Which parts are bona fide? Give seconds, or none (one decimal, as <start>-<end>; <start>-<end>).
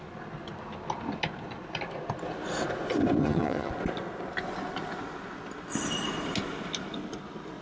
0.0-3.2; 3.7-7.6